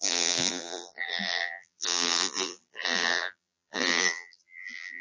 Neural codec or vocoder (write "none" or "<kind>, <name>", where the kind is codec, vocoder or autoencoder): vocoder, BigVGAN v2